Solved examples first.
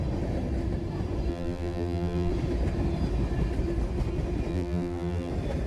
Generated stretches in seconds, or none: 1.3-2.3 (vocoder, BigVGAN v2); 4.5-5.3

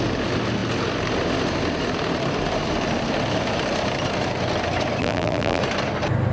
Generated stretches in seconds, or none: 5.0-5.6 (vocoder, BigVGAN v2)

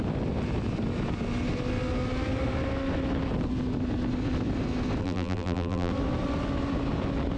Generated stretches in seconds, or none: 5.0-5.9 (vocoder, BigVGAN v2)

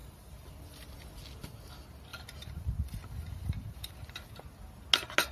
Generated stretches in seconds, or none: 0.0-0.5 (vocoder, BigVGAN v2); 2.1-3.9

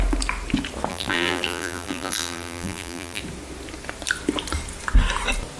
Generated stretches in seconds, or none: 0.9-3.2 (vocoder, BigVGAN v2)